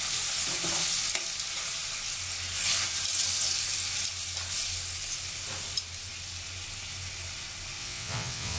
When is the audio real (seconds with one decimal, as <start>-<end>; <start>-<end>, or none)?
0.0-7.8